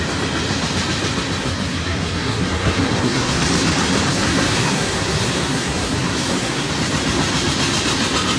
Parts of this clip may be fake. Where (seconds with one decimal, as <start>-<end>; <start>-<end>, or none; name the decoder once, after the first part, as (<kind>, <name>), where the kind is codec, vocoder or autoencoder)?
1.4-3.4 (codec, SNAC); 4.1-6.7